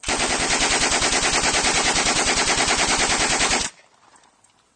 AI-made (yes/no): no